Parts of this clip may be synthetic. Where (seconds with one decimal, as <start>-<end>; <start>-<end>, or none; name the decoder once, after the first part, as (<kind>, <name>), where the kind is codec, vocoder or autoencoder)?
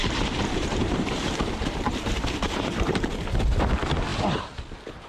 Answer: 0.0-3.1 (vocoder, BigVGAN v2)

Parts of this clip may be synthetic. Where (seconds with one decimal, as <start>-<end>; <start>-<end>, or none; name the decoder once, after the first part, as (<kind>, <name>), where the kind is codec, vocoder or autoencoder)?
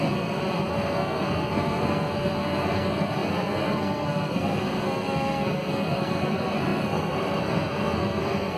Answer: 0.0-8.6 (codec, SNAC)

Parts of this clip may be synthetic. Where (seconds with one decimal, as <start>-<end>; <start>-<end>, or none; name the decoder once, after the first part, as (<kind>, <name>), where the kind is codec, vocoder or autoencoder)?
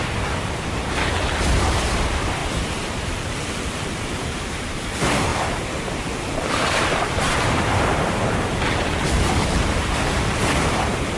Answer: 0.0-2.4 (vocoder, BigVGAN v2); 2.9-11.2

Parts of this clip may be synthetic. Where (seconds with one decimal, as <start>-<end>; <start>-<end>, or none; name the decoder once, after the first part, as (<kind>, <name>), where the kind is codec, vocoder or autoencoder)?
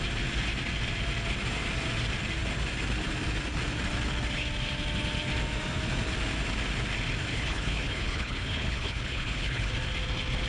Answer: 7.3-9.7 (codec, HILCodec)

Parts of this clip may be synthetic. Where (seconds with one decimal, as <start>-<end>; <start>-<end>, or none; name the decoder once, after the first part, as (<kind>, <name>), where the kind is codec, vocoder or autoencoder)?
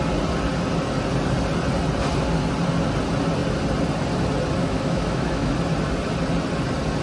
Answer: 4.6-5.5 (autoencoder, DAC-VAE)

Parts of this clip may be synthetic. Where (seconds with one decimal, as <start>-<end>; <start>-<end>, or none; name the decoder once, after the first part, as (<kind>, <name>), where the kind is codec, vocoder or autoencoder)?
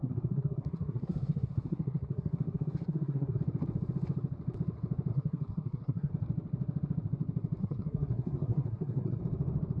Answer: 0.0-3.4 (codec, SNAC); 5.1-6.1; 7.6-9.2